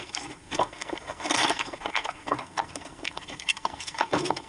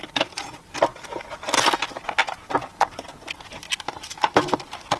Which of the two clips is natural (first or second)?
second